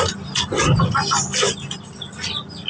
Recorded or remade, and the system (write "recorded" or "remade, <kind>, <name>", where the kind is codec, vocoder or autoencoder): recorded